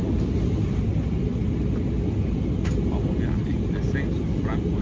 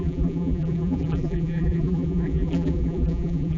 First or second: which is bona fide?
first